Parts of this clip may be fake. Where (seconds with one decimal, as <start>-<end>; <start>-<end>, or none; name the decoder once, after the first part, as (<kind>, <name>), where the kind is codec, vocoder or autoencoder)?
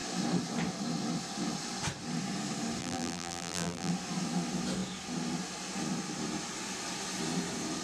2.8-3.9 (vocoder, BigVGAN v2)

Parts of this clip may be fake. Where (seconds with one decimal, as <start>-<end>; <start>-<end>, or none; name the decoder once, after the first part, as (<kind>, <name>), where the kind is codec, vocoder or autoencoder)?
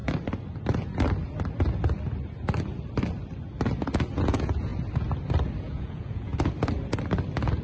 4.2-4.7 (vocoder, Vocos); 5.6-6.3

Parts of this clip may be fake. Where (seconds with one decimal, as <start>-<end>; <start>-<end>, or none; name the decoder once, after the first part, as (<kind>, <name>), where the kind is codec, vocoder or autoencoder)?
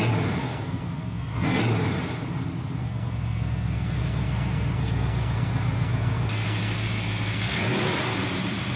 0.4-1.6 (codec, SNAC); 2.8-7.6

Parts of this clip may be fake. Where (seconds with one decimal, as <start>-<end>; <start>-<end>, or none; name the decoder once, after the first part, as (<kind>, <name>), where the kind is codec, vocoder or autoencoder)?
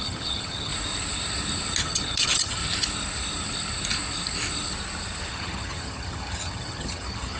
0.0-0.7 (vocoder, HiFi-GAN); 1.8-2.6; 5.3-7.4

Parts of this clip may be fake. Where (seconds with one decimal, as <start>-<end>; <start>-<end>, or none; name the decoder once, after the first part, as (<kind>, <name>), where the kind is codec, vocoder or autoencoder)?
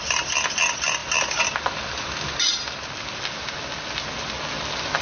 none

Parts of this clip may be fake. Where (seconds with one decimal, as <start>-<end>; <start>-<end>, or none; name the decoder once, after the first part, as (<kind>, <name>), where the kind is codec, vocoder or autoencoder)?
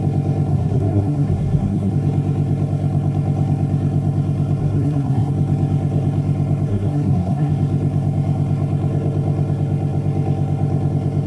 0.5-1.9 (codec, SNAC); 4.6-5.3; 6.7-7.5